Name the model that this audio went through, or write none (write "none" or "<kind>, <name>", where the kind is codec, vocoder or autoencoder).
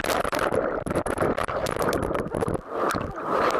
none